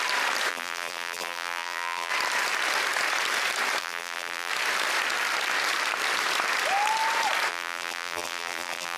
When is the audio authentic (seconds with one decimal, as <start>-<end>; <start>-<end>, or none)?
0.0-0.5; 2.1-3.8; 4.5-7.5